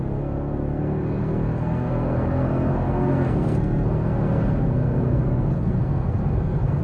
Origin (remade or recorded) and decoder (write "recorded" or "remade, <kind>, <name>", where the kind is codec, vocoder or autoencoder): remade, codec, SNAC